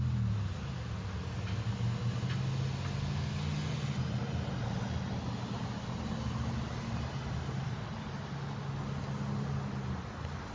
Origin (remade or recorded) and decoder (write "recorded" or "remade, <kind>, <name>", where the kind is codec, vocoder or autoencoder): recorded